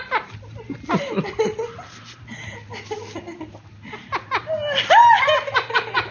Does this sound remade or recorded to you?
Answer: recorded